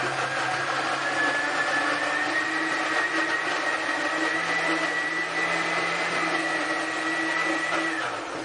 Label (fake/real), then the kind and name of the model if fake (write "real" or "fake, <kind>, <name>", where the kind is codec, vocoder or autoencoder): real